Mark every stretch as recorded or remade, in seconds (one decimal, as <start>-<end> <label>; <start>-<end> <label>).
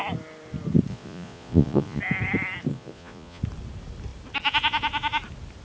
0.0-0.9 recorded; 0.9-2.0 remade; 2.0-2.7 recorded; 2.7-3.4 remade; 3.4-5.6 recorded